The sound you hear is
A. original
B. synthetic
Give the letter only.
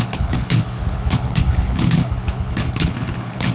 B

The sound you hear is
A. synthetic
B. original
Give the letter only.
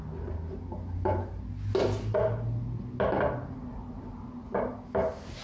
B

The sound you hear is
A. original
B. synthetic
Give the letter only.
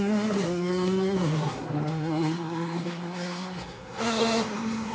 B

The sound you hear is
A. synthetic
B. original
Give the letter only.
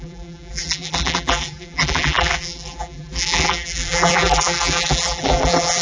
A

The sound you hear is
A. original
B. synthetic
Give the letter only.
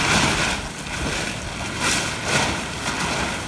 A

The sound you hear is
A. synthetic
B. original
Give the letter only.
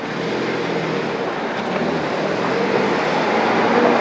B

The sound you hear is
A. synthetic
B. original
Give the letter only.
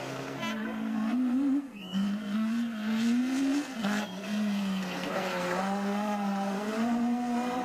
A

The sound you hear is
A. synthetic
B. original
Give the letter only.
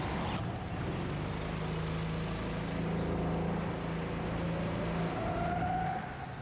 B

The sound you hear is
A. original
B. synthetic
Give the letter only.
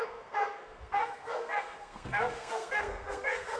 B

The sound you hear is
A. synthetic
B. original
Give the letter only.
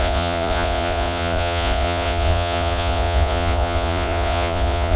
A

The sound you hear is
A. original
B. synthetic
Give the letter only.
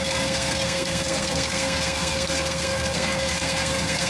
B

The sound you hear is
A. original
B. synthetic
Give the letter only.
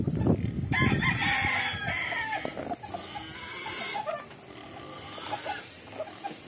A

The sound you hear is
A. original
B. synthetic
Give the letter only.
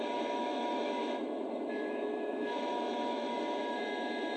B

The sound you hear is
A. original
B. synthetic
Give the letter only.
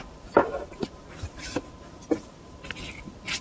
A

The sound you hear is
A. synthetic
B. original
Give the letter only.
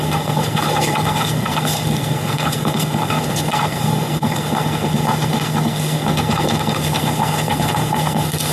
A